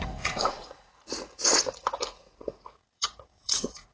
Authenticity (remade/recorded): remade